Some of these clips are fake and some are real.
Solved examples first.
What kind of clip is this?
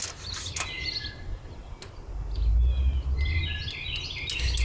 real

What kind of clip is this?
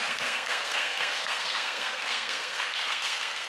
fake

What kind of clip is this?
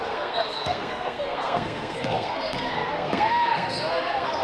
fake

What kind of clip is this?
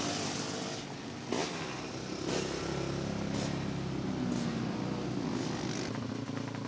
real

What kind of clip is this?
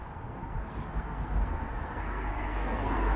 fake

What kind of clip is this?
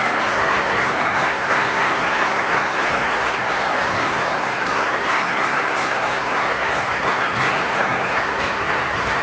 fake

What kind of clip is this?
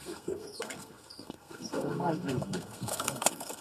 fake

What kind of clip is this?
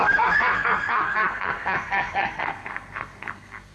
fake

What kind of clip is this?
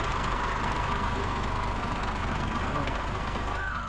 fake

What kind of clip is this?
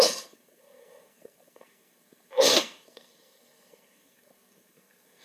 fake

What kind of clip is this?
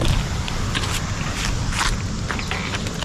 real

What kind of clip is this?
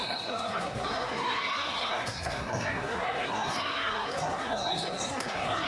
fake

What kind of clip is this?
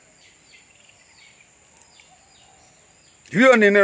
real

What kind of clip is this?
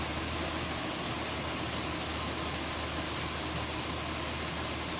real